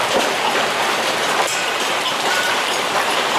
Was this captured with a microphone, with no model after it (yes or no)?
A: no